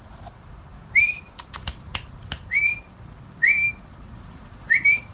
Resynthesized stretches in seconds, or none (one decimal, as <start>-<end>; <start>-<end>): 0.0-5.1